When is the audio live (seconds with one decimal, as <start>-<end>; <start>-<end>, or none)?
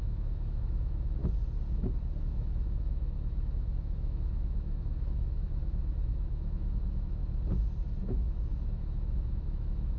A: 1.2-2.2; 7.2-8.0